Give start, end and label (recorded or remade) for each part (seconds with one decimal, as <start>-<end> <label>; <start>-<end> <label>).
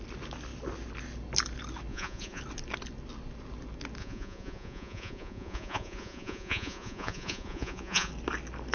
0.0-1.9 recorded; 1.9-2.4 remade; 2.4-4.0 recorded; 4.0-8.1 remade; 8.1-8.7 recorded